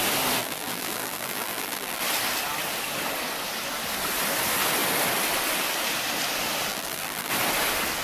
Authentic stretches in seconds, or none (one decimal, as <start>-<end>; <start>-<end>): 0.0-0.4; 2.0-6.7; 7.3-8.0